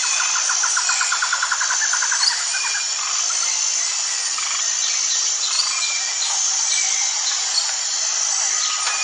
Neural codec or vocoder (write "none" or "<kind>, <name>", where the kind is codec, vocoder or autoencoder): none